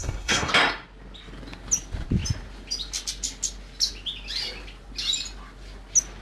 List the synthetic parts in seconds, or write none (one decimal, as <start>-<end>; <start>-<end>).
0.0-0.5